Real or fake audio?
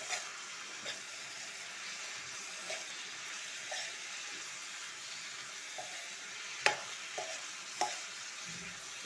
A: real